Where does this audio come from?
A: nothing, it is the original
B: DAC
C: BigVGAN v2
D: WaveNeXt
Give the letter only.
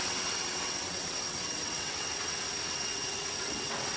D